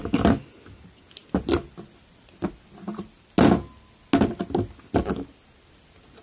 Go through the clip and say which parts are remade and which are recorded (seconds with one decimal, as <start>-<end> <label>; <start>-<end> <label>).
0.0-6.2 recorded